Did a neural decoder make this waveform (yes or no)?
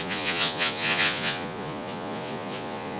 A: yes